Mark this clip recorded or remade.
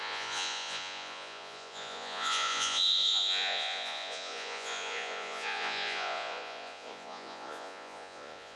remade